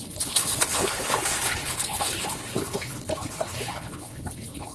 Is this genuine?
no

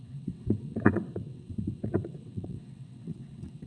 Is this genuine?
no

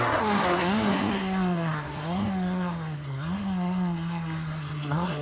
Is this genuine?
no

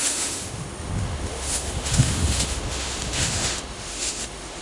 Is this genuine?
no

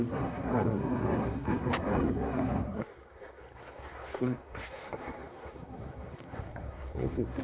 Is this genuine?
no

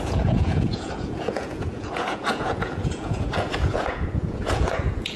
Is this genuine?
no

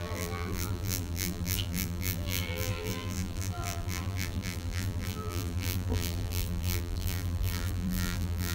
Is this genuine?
no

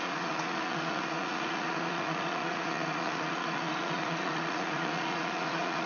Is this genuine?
no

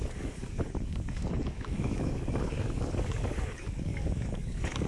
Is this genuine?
no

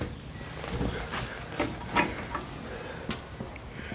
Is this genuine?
yes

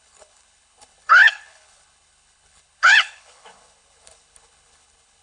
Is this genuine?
no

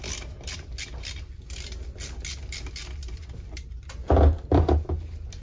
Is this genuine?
yes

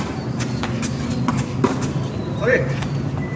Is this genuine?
yes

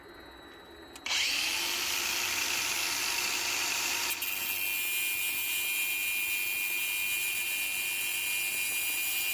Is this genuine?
yes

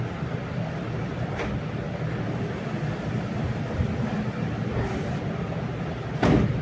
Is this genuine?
yes